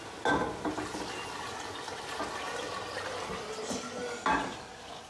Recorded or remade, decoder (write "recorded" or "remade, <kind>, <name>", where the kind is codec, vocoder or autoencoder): recorded